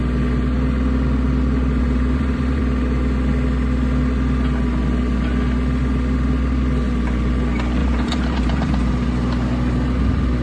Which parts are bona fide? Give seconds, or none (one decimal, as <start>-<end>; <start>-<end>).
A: 0.0-1.8; 2.6-7.8; 8.9-10.4